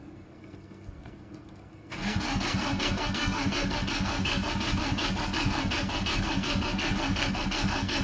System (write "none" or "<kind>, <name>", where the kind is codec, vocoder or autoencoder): codec, SNAC